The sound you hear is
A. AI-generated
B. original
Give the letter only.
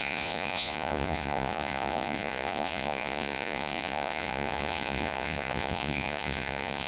A